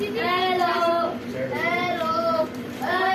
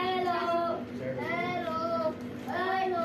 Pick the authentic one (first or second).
second